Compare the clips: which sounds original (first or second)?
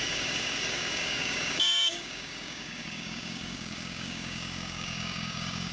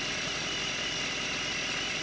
second